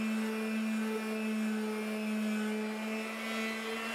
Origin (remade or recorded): recorded